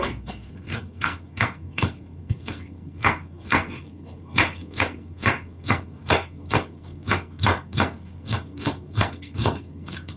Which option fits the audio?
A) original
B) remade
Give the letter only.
B